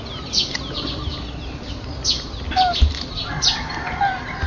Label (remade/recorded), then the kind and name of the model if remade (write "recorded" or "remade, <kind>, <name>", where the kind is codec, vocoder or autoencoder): recorded